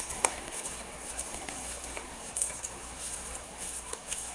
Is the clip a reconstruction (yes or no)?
yes